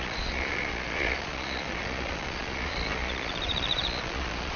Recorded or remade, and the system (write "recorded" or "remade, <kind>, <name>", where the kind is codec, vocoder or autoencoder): remade, vocoder, Vocos